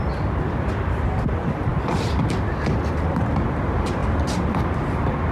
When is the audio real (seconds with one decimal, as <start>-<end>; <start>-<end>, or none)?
0.0-5.3